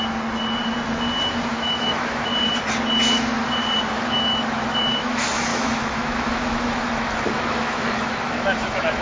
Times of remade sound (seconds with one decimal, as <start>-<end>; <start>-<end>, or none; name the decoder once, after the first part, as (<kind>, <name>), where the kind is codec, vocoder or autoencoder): 1.5-2.3 (autoencoder, DAC-VAE); 3.9-9.0